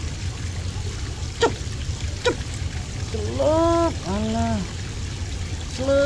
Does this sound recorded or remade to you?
recorded